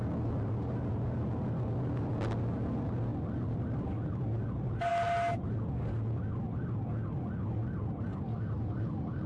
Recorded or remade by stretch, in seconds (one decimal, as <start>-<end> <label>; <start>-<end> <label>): 0.0-9.3 recorded